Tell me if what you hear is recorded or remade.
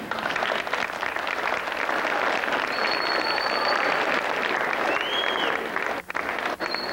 recorded